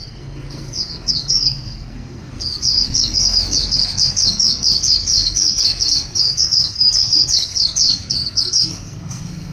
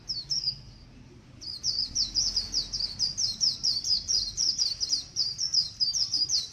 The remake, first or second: first